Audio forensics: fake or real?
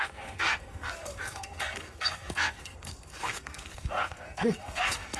fake